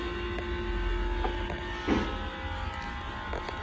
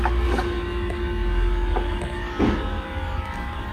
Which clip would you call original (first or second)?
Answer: first